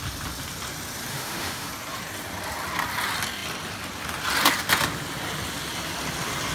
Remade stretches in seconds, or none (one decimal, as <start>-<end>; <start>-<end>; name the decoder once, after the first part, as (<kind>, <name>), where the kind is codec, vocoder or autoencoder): 1.1-1.7 (autoencoder, DAC-VAE)